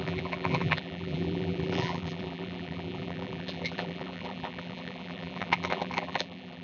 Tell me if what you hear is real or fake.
fake